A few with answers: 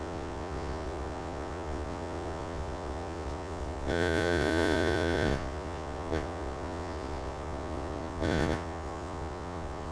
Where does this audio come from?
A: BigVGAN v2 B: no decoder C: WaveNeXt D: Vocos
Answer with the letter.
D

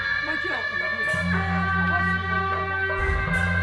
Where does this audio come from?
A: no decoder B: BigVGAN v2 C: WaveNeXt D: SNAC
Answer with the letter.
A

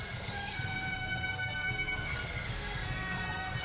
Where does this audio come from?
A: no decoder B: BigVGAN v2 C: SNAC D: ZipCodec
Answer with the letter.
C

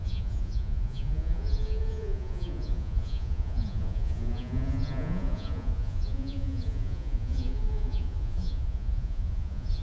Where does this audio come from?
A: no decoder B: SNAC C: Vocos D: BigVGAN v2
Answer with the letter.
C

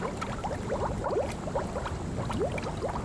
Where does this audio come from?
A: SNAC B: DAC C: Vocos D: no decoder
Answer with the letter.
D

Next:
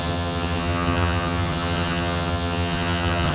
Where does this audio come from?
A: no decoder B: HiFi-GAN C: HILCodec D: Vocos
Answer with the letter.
B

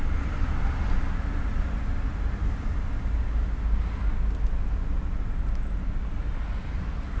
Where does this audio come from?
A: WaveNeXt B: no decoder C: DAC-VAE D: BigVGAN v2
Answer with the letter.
B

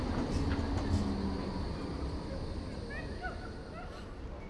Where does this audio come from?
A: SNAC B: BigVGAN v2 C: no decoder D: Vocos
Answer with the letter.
C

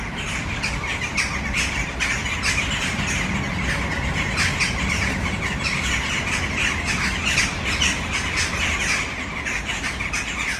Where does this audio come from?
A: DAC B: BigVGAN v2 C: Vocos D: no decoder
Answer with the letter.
D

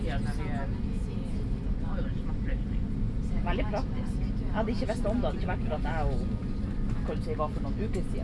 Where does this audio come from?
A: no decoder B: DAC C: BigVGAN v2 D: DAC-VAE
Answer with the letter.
A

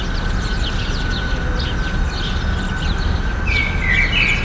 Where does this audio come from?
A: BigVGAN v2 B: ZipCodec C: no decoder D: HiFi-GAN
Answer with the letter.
C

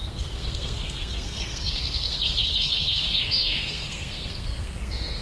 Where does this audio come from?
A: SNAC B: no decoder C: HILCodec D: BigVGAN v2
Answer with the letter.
A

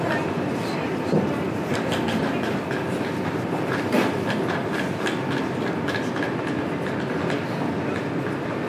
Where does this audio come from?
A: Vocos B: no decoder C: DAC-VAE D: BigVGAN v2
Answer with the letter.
B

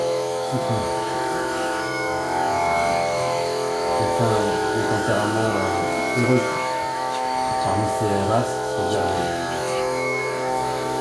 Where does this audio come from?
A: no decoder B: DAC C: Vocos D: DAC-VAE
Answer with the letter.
D